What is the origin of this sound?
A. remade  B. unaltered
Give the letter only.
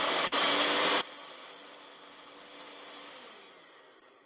B